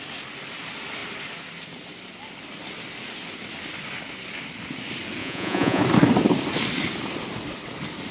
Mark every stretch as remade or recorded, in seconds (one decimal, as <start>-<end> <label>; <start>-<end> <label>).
0.0-5.2 recorded; 5.2-5.8 remade; 5.8-8.1 recorded